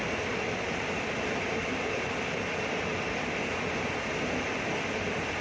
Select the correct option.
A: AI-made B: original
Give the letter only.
B